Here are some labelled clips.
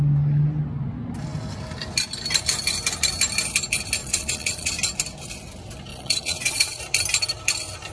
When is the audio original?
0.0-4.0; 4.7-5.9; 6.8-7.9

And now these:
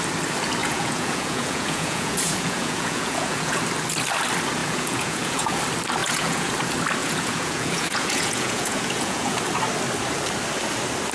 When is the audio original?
0.0-0.6; 3.6-4.6; 5.6-6.0; 6.5-7.0; 9.4-11.1

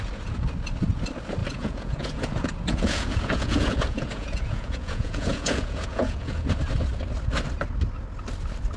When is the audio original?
0.0-1.4; 6.4-8.8